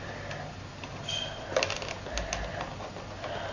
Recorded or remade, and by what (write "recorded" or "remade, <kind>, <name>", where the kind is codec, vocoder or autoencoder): recorded